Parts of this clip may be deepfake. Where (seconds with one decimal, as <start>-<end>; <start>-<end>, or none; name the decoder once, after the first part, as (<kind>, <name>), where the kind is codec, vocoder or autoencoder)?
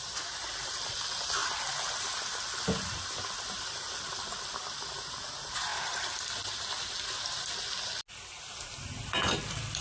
none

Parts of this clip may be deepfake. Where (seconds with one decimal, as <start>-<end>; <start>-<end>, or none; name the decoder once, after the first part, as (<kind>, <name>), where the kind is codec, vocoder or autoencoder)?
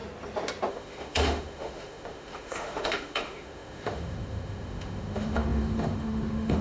0.7-6.6 (autoencoder, DAC-VAE)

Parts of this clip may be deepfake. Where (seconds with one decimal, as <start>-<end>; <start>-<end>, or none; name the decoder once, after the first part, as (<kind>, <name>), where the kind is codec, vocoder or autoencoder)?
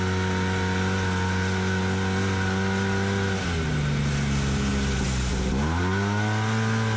none